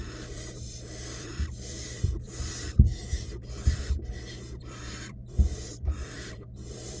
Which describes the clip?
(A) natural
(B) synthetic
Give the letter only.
B